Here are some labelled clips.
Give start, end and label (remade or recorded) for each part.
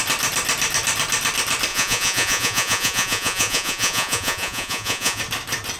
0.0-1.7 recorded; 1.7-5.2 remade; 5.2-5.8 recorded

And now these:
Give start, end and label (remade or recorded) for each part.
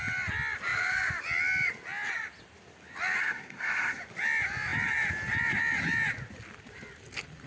0.0-3.2 recorded; 3.2-4.0 remade; 4.0-7.5 recorded